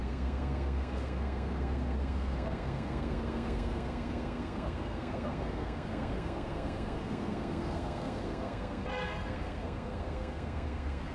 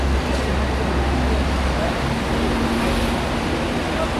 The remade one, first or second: first